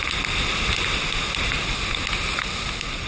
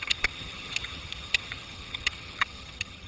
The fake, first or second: second